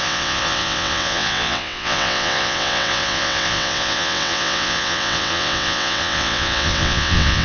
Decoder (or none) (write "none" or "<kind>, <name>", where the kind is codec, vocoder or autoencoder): vocoder, WaveNeXt